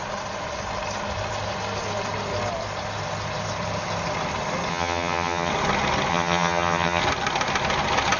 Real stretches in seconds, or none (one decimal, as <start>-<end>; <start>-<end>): 0.0-4.7; 5.5-6.1; 7.0-8.2